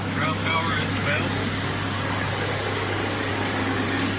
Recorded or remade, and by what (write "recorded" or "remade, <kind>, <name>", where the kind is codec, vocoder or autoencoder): remade, codec, DAC